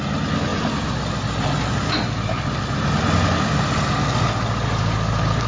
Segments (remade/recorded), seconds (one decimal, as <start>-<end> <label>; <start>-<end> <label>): 0.0-5.5 recorded